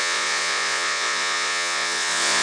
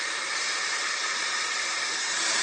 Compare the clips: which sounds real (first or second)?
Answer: second